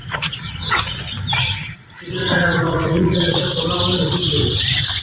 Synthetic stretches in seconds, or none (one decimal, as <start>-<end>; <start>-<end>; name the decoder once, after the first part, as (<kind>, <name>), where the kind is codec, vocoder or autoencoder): 0.0-1.0 (vocoder, Vocos); 2.3-3.4